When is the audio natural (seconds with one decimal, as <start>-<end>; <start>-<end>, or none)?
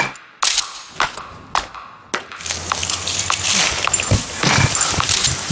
0.0-5.5